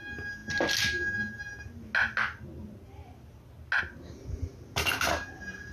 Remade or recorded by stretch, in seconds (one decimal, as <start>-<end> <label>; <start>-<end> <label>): 0.0-5.7 recorded